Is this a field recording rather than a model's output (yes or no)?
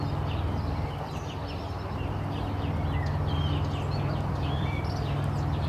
yes